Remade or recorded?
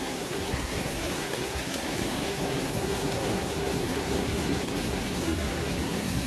remade